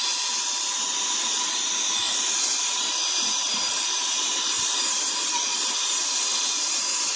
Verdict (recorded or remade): recorded